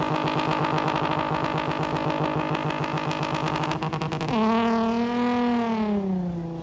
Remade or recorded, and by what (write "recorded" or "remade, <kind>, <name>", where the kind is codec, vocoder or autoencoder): recorded